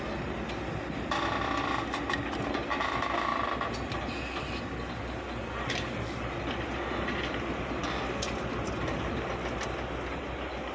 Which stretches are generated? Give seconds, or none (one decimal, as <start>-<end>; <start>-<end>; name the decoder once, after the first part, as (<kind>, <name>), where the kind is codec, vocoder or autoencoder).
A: none